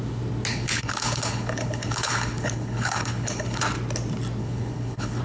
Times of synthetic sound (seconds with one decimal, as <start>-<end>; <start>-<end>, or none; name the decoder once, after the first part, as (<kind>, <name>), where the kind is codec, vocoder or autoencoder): 0.5-3.6 (codec, HILCodec); 4.4-5.2